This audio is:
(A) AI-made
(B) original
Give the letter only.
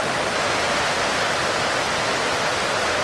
B